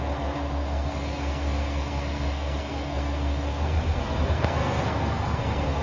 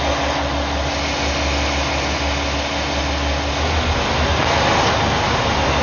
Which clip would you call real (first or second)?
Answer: second